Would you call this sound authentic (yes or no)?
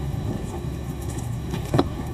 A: no